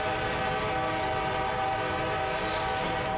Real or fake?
real